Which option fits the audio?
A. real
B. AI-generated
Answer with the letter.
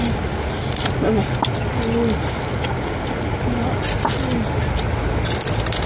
A